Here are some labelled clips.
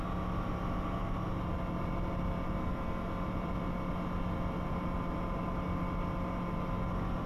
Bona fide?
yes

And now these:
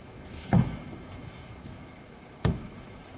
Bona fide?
no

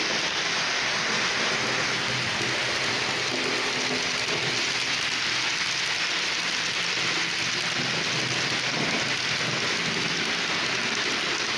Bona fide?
yes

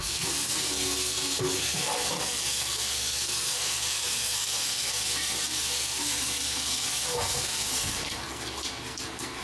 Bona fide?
no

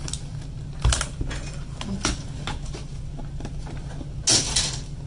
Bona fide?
yes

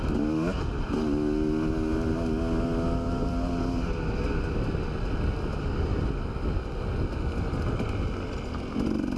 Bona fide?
yes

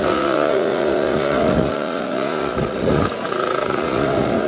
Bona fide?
no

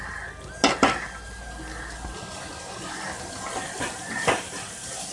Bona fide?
yes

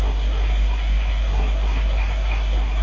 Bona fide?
no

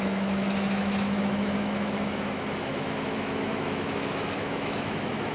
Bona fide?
no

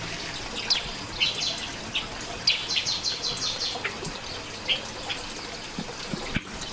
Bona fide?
yes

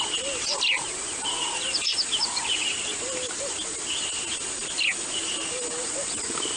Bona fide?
yes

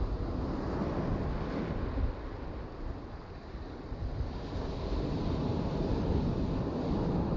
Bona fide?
yes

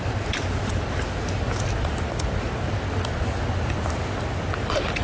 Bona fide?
yes